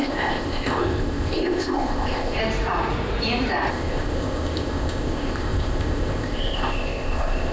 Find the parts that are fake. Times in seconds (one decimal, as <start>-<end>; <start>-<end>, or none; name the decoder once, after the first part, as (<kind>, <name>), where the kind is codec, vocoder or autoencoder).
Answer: 0.0-2.4 (codec, ZipCodec); 3.7-7.5